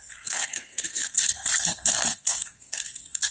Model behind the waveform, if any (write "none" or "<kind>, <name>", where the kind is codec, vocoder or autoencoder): codec, SNAC